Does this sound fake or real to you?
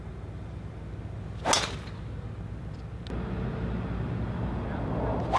real